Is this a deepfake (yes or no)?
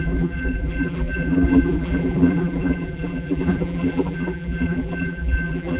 yes